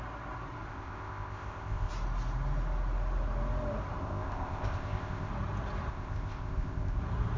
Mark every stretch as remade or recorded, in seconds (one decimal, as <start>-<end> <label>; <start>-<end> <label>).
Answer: 0.0-0.7 recorded; 0.7-1.9 remade; 1.9-4.0 recorded; 4.0-5.3 remade; 5.3-5.9 recorded; 5.9-7.0 remade; 7.0-7.4 recorded